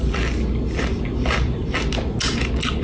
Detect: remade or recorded recorded